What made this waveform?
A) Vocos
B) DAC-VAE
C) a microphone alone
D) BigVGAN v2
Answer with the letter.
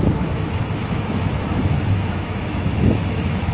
B